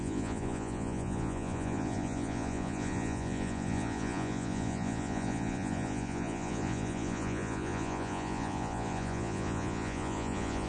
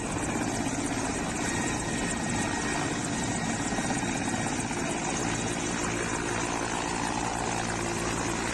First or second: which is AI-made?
first